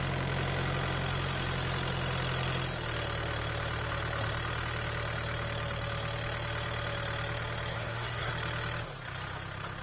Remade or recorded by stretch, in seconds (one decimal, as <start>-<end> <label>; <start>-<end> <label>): 0.0-7.7 recorded; 7.7-8.3 remade; 8.3-9.8 recorded